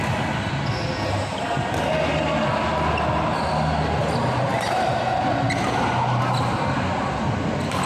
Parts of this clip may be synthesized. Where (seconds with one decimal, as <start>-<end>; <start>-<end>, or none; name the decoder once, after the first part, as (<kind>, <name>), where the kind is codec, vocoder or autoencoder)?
4.5-5.4 (vocoder, BigVGAN v2)